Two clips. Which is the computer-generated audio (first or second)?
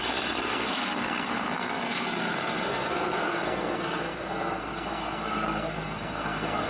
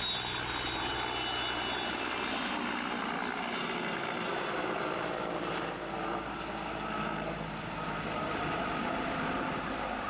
first